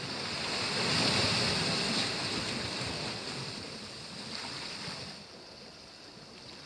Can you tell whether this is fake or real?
real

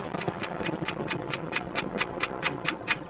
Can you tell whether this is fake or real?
fake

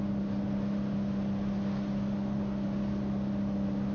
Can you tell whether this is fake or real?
real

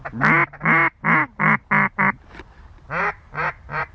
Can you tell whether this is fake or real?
real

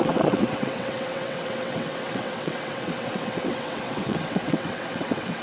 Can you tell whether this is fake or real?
fake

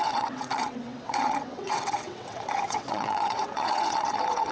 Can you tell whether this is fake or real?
fake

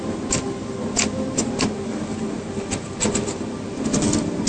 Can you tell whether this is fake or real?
real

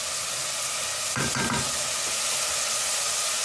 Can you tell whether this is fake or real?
real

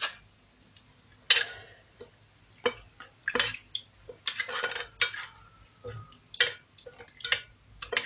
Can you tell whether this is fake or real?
real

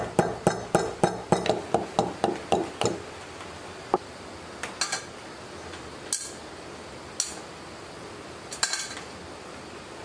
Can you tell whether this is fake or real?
real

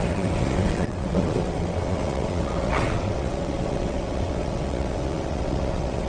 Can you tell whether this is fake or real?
fake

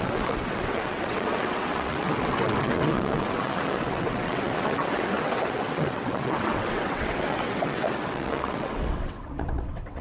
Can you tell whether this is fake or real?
fake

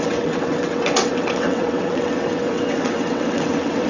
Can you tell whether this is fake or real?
fake